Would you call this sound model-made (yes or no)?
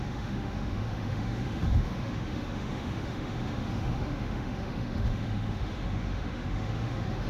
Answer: yes